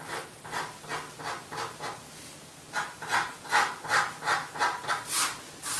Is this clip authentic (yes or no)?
yes